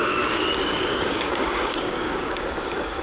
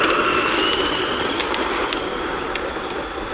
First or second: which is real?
second